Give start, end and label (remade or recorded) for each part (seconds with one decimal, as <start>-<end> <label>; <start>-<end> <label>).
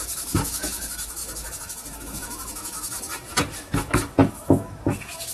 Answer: 0.0-5.3 remade